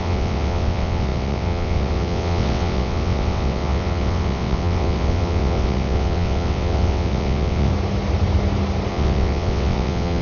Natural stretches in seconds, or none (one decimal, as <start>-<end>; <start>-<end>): 7.7-8.9